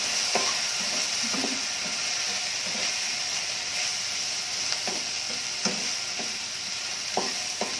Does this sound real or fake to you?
real